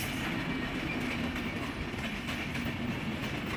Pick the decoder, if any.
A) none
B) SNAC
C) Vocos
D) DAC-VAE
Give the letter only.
A